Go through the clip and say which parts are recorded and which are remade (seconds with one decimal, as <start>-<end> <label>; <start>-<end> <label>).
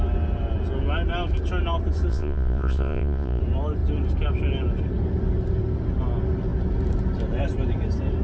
0.0-2.1 recorded; 2.1-3.4 remade; 3.4-8.2 recorded